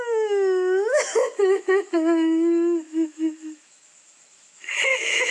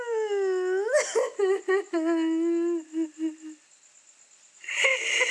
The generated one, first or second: first